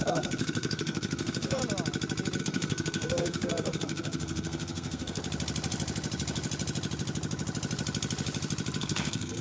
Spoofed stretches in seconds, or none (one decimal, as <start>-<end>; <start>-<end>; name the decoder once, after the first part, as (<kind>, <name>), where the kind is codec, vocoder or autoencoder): 0.0-1.6 (codec, SNAC); 2.4-5.2; 8.8-9.4